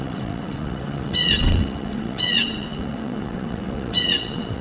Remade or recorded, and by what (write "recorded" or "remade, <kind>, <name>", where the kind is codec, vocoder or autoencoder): remade, vocoder, WaveNeXt